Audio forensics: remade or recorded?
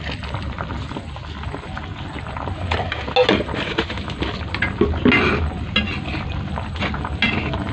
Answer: recorded